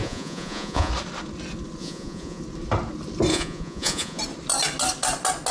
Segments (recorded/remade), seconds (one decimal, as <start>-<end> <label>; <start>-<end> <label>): 0.0-0.9 remade; 0.9-1.8 recorded; 1.8-2.4 remade; 2.4-3.3 recorded; 3.3-4.2 remade; 4.2-5.5 recorded